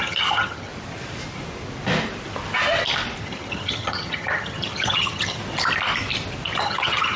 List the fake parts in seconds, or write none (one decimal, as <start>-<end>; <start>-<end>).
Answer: 0.0-0.7; 3.2-5.4; 6.6-7.2

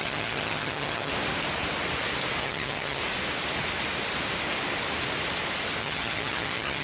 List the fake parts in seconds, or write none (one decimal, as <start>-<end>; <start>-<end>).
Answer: 0.0-1.1; 2.4-3.0; 5.8-6.8